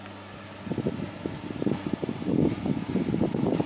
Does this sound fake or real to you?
real